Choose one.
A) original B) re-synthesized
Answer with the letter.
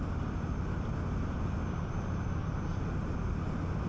A